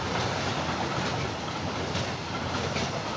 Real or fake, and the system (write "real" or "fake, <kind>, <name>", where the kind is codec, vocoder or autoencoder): real